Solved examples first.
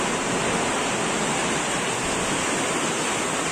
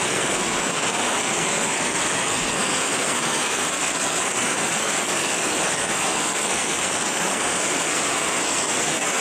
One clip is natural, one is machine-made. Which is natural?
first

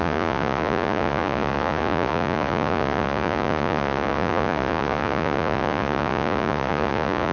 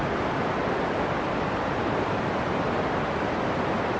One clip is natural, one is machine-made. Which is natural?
second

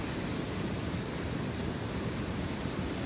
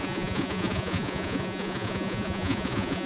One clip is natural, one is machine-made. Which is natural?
first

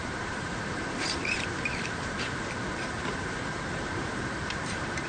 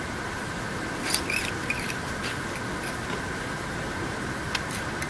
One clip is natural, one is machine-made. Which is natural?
second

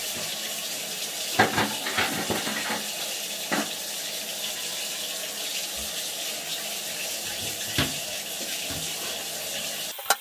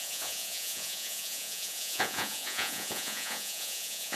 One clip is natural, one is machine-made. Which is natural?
first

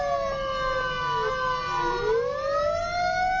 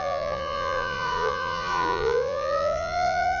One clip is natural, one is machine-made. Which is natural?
first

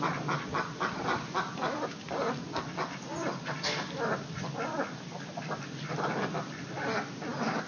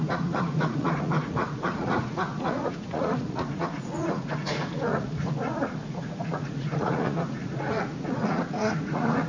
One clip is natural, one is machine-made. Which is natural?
first